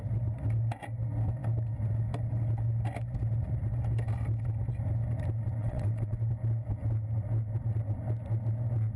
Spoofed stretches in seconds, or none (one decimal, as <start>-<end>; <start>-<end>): 5.6-6.2